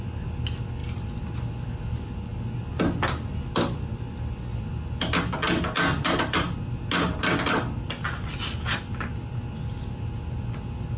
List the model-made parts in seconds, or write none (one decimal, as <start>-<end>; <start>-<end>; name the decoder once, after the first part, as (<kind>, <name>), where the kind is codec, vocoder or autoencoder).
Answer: none